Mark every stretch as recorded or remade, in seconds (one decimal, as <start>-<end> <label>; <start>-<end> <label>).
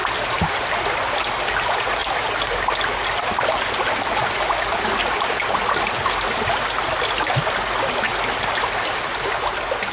0.0-9.9 recorded